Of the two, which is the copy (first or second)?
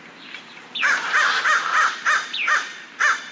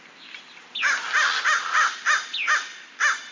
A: first